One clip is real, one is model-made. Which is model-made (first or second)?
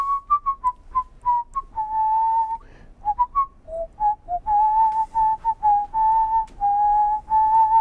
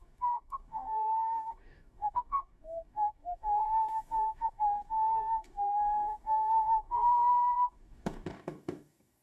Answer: second